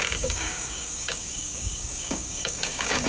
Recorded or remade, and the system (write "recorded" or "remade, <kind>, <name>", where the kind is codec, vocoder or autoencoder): remade, codec, DAC